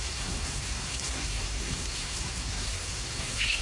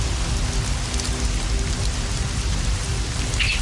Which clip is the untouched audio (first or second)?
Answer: second